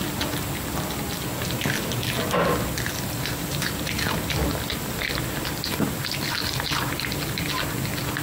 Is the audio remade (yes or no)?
no